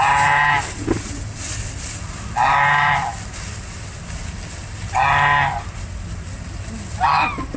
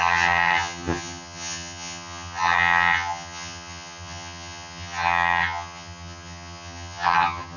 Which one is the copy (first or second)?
second